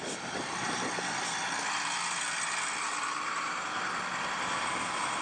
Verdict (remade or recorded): recorded